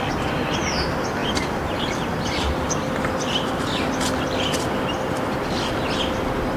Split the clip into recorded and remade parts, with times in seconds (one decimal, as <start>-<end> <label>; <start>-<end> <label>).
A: 0.0-6.6 recorded